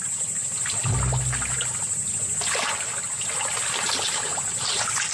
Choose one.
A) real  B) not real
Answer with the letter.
A